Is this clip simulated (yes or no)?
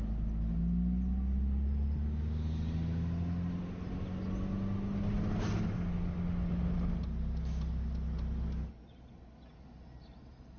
no